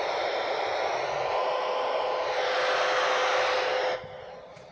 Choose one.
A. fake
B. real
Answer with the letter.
B